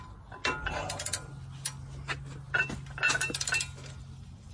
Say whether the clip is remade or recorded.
recorded